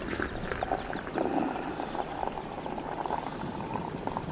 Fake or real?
real